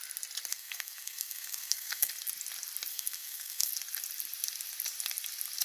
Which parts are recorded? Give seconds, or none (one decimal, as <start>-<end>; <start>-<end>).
0.0-0.5; 2.1-2.9; 3.7-5.6